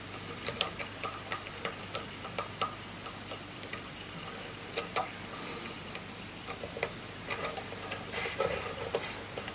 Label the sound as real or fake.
real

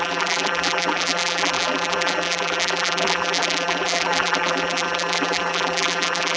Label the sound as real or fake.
fake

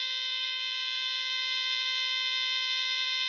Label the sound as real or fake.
fake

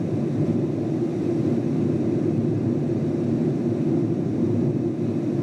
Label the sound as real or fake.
real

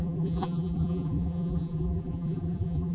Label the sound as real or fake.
fake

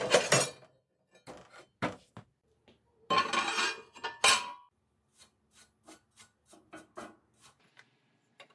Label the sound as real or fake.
real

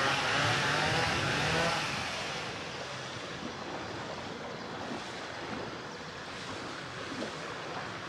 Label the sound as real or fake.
real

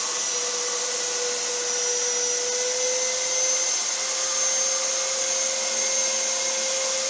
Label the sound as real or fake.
real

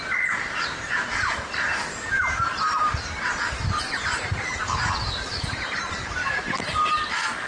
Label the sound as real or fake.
fake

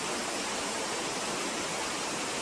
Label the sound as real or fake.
real